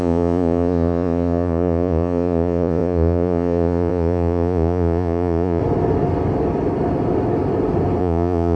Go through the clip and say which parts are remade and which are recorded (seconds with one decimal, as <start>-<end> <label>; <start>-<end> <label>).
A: 0.0-5.6 remade; 5.6-8.0 recorded; 8.0-8.5 remade